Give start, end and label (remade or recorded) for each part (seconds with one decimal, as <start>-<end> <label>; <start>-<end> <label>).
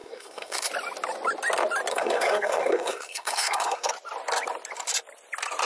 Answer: 0.0-0.7 remade; 0.7-1.9 recorded; 1.9-3.9 remade; 3.9-5.7 recorded